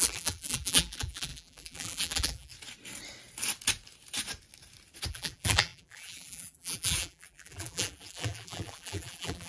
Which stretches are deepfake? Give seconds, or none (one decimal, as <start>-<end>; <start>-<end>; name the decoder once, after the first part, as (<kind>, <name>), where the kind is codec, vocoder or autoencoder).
0.0-2.5 (vocoder, BigVGAN v2); 5.1-9.5